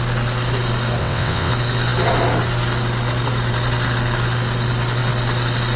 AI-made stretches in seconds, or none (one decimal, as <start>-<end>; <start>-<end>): 1.0-1.5